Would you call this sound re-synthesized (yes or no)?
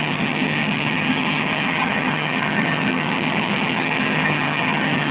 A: yes